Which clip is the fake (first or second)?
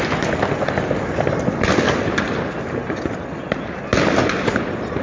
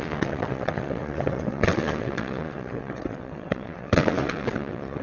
second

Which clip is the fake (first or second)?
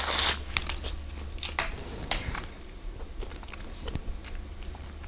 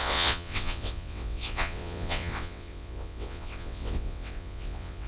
second